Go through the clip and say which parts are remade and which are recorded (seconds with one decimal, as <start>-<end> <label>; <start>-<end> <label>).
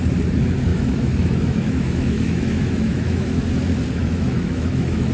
0.0-0.7 recorded; 0.7-3.4 remade; 3.4-4.0 recorded; 4.0-5.1 remade